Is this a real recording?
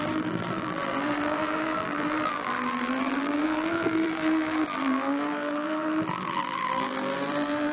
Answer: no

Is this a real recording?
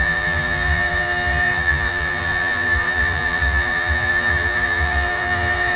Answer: no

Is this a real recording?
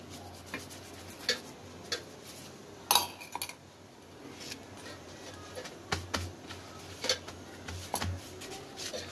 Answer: yes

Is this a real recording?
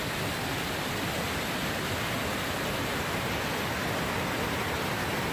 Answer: yes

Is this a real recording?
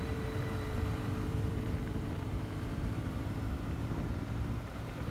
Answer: no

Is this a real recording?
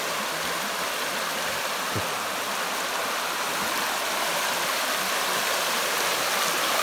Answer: yes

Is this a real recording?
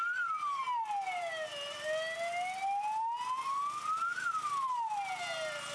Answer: yes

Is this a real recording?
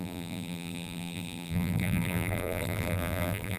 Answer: no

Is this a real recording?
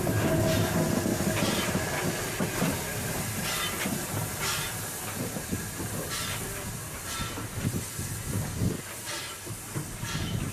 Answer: yes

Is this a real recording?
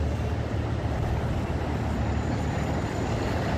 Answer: yes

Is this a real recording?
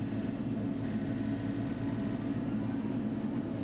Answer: yes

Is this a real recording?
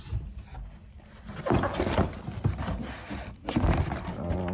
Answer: yes